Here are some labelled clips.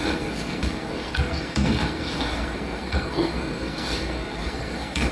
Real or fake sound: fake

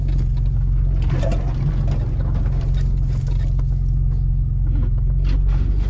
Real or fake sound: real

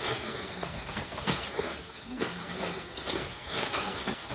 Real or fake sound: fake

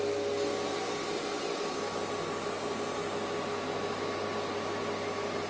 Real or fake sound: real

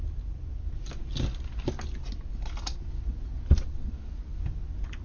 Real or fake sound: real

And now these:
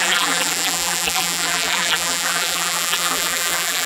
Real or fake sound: fake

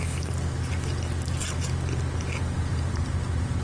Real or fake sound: real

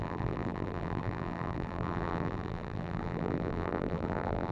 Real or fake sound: fake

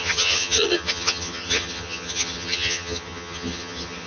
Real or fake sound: fake